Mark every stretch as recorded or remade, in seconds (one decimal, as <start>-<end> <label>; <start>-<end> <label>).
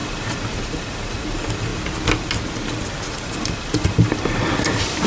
0.0-5.1 recorded